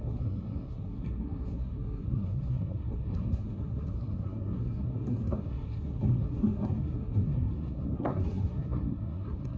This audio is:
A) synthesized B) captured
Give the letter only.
A